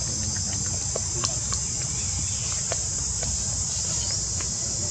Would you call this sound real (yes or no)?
yes